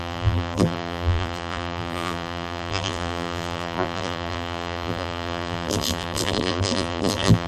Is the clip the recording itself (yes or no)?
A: no